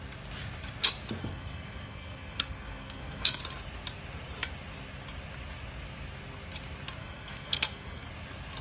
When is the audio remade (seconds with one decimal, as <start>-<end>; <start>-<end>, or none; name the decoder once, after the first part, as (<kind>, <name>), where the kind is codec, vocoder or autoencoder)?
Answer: 1.2-3.4 (codec, SNAC); 7.0-8.1